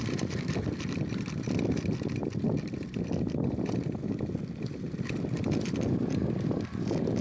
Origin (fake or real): fake